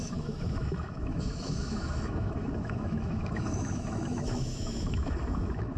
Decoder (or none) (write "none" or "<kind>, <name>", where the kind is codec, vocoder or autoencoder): autoencoder, DAC-VAE